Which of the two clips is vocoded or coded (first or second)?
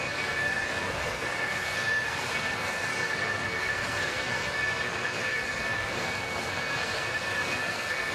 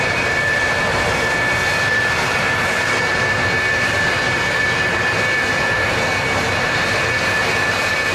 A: first